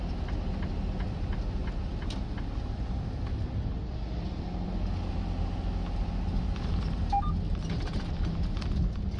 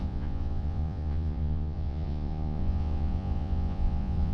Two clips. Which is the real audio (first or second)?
first